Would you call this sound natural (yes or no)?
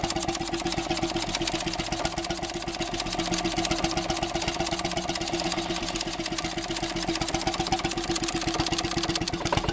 yes